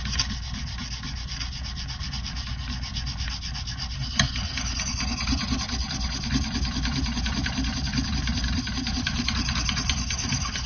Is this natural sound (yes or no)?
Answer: yes